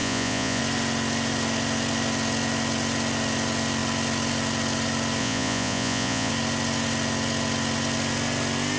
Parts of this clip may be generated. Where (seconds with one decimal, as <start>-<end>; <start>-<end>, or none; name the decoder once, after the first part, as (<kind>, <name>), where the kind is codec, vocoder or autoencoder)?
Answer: 0.0-0.6 (vocoder, Vocos); 5.2-6.3